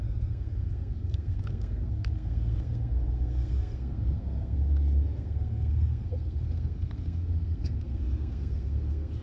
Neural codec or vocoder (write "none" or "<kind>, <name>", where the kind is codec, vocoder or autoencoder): codec, SNAC